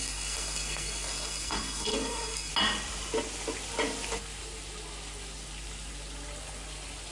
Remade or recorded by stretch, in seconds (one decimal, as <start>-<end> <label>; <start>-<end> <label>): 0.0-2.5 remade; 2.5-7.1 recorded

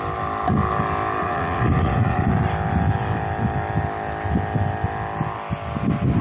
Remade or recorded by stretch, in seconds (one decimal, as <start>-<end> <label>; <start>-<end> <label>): 0.0-1.2 recorded; 1.2-2.3 remade; 2.3-6.2 recorded

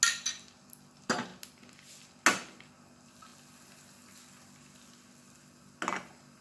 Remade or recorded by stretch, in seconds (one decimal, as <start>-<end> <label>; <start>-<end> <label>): 0.0-6.4 recorded